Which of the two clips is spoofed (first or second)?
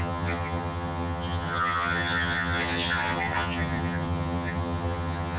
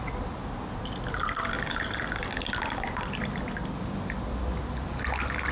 first